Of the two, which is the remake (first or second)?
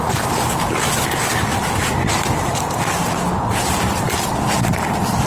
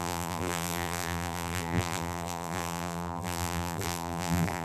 second